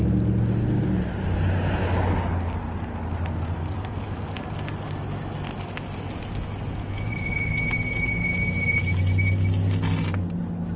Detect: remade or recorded recorded